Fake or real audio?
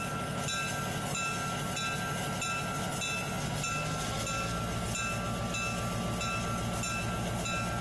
real